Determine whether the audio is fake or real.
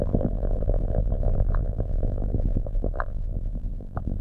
fake